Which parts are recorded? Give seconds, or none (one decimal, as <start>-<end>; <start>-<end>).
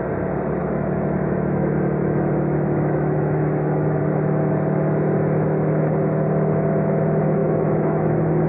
0.0-0.6; 4.0-7.4; 8.1-8.5